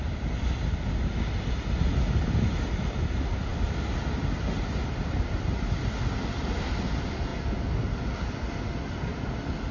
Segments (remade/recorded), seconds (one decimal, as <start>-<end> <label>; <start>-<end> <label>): 0.0-9.7 recorded